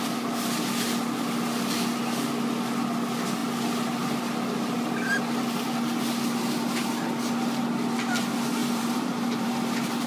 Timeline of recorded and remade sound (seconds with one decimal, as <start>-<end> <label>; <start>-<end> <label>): 0.0-8.6 recorded; 8.6-9.5 remade; 9.5-10.1 recorded